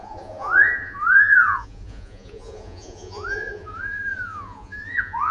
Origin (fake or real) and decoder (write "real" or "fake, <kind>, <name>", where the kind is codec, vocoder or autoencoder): fake, vocoder, Vocos